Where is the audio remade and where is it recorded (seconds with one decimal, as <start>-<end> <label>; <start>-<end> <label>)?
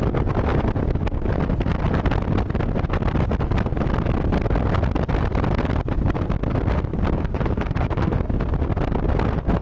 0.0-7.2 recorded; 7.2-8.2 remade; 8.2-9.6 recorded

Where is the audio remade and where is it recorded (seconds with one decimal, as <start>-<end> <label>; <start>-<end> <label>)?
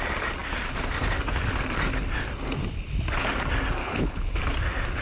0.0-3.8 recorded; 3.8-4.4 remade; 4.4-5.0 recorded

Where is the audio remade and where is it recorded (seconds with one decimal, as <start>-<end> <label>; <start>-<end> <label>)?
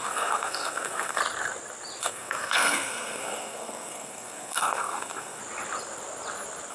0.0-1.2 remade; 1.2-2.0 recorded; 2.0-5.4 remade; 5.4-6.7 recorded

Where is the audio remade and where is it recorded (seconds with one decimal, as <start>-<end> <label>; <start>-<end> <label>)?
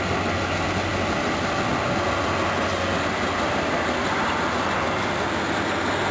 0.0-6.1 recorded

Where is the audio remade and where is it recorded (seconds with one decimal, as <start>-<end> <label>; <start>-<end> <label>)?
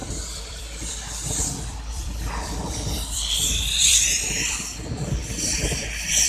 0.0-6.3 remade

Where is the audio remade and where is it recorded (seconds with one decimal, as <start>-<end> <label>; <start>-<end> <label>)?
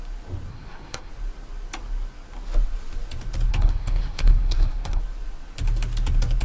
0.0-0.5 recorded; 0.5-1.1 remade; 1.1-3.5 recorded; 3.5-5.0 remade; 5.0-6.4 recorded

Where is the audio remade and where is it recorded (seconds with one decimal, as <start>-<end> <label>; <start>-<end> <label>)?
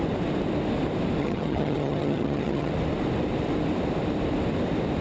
0.0-1.2 recorded; 1.2-2.7 remade; 2.7-5.0 recorded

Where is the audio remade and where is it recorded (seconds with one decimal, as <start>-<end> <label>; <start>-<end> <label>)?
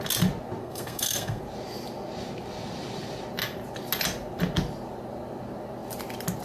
0.0-0.6 recorded; 0.6-1.4 remade; 1.4-6.4 recorded